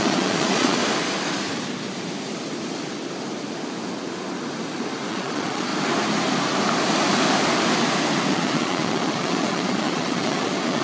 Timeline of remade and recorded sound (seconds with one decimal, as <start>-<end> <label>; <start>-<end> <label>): 0.0-0.8 remade; 0.8-5.1 recorded; 5.1-5.7 remade; 5.7-8.3 recorded; 8.3-10.8 remade

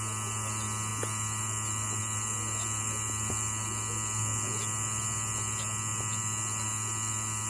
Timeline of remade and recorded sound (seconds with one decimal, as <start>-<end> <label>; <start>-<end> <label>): 0.0-7.5 recorded

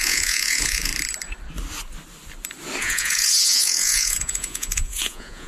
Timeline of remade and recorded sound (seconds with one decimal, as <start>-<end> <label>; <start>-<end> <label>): 0.0-0.9 remade; 0.9-2.8 recorded; 2.8-5.5 remade

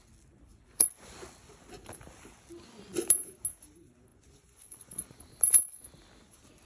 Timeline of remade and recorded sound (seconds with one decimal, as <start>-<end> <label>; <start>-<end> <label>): 0.0-0.5 recorded; 0.5-1.1 remade; 1.1-4.1 recorded; 4.1-5.3 remade; 5.3-6.7 recorded

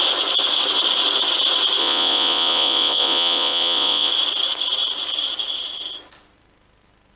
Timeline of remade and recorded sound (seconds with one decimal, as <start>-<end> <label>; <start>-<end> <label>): 0.0-1.8 recorded; 1.8-4.1 remade; 4.1-7.2 recorded

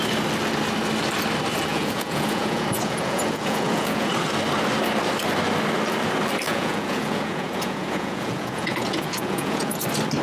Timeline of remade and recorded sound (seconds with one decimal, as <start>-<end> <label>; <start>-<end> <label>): 0.0-1.7 recorded; 1.7-4.1 remade; 4.1-6.5 recorded; 6.5-9.7 remade; 9.7-10.2 recorded

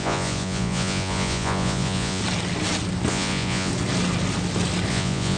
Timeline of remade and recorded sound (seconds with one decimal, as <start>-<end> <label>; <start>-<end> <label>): 0.0-2.2 remade; 2.2-3.1 recorded; 3.1-3.7 remade; 3.7-4.9 recorded; 4.9-5.4 remade